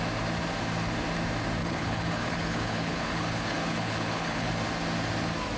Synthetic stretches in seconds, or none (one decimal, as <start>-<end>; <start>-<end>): 1.6-4.5